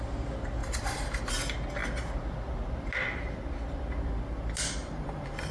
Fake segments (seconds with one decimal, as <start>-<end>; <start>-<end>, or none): 0.6-1.3; 4.8-5.5